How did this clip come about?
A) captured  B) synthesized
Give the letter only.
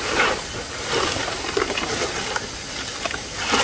A